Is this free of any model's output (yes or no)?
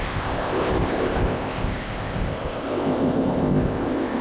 no